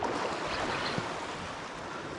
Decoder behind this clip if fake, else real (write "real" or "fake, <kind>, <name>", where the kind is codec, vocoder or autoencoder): real